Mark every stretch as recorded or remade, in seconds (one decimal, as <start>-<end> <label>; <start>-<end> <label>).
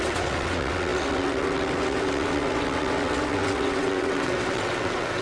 0.0-5.2 remade